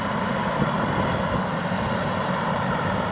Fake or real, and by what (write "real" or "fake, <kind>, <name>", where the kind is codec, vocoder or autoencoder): real